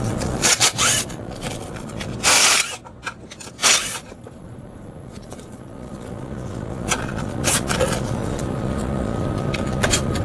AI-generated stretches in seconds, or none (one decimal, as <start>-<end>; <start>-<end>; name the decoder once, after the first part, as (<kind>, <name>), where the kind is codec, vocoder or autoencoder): 0.0-2.1 (vocoder, Vocos); 3.8-10.2